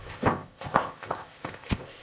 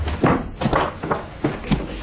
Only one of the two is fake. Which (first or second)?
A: first